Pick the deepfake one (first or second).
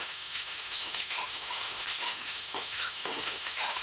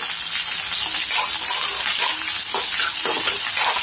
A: first